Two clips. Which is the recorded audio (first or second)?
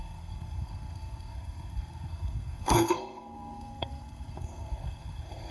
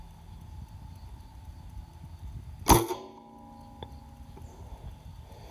second